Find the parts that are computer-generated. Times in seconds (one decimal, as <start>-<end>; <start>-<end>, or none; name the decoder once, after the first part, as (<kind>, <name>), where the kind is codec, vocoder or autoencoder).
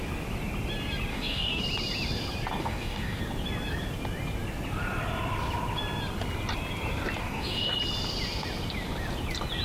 1.1-1.6 (codec, DAC); 2.6-3.2; 7.2-7.7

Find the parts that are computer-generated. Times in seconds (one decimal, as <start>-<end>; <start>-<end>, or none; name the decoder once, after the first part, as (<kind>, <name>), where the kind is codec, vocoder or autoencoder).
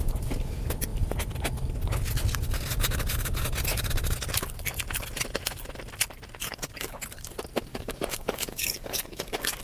6.4-7.0 (codec, DAC); 7.7-9.6